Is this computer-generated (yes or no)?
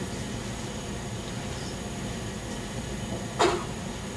no